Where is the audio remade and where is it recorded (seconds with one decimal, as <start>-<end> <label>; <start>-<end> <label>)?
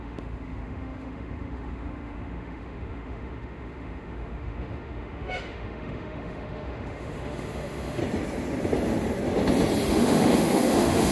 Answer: 0.0-8.0 remade; 8.0-9.9 recorded; 9.9-11.1 remade